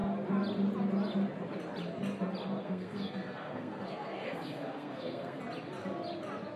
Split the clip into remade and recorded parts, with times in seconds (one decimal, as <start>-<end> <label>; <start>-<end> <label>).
0.0-2.6 recorded; 2.6-5.4 remade; 5.4-6.6 recorded